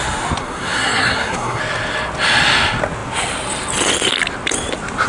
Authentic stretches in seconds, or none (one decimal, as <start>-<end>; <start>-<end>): 0.0-0.4; 1.6-5.1